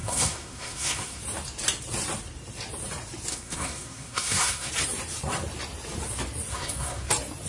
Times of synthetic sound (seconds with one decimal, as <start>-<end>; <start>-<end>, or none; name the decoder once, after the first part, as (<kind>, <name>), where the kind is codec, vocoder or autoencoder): 0.0-1.2 (codec, SNAC); 3.3-4.7; 6.5-7.1